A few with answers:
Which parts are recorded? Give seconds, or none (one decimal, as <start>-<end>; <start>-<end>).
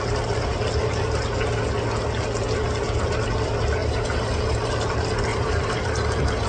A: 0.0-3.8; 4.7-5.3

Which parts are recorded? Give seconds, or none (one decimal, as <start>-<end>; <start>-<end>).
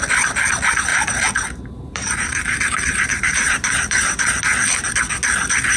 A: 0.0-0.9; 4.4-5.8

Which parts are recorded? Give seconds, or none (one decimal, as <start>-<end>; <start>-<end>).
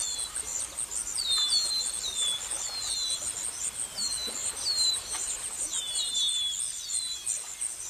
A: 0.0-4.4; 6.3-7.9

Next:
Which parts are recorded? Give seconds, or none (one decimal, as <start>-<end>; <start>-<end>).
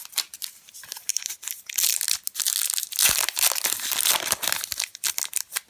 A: 0.0-1.1; 2.0-3.0; 4.1-5.7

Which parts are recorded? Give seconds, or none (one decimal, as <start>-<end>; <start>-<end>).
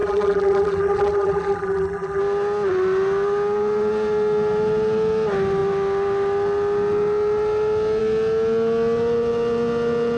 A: 2.2-10.2